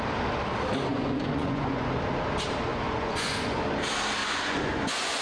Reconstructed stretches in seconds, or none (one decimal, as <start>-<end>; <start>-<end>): 0.9-1.9; 2.7-3.6; 4.2-5.2